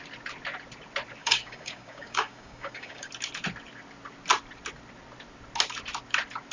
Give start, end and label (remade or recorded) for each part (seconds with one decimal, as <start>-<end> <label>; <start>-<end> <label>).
0.0-1.2 recorded; 1.2-3.1 remade; 3.1-6.5 recorded